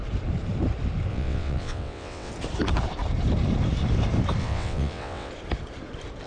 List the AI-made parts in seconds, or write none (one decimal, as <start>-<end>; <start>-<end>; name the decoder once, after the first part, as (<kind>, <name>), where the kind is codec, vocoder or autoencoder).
1.1-2.3 (vocoder, WaveNeXt); 4.4-5.3

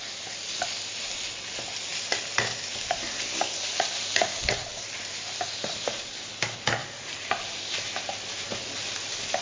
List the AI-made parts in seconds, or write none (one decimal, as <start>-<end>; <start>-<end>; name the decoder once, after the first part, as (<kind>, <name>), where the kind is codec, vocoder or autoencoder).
4.7-6.3 (vocoder, BigVGAN v2); 6.8-8.7

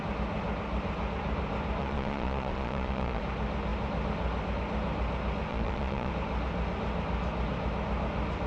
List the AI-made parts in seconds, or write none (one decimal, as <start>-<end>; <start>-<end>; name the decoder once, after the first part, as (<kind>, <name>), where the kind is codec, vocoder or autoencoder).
1.8-3.2 (vocoder, Vocos); 5.5-6.1

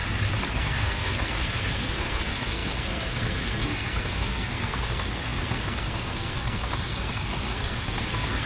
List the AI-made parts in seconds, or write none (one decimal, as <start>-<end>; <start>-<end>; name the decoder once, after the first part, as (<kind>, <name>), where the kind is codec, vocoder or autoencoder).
0.5-8.5 (codec, SNAC)

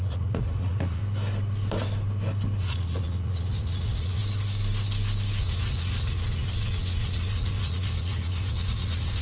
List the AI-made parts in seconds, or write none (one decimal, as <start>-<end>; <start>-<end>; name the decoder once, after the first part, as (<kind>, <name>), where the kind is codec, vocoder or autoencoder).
0.0-1.0 (vocoder, Vocos); 2.6-4.2; 5.4-9.2

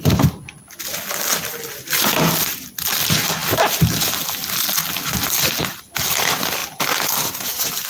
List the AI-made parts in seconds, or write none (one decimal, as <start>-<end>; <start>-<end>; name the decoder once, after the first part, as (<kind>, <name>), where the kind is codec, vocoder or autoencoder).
none